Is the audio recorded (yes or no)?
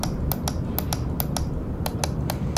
yes